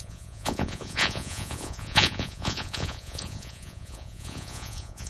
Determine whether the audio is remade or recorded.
remade